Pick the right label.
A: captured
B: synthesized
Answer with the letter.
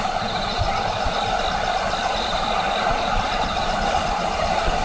A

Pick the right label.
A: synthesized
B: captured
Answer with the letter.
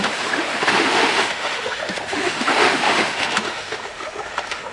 A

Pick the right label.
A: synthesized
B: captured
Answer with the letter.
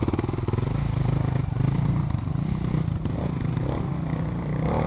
B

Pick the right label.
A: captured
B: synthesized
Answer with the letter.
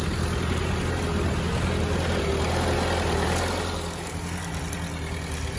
A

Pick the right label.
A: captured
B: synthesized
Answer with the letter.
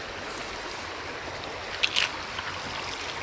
A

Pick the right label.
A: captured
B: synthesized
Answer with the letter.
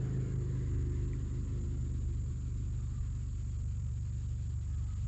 A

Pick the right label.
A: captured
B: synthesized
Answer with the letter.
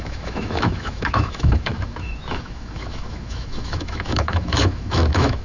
B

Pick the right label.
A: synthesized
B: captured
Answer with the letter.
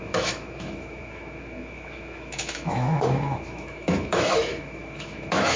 A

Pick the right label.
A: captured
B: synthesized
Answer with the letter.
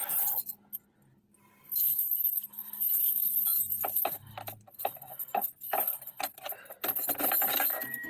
A